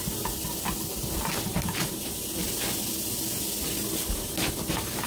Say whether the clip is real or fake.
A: real